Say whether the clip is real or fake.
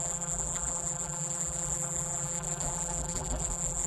fake